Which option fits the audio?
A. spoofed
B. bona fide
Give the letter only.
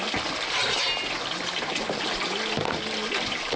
B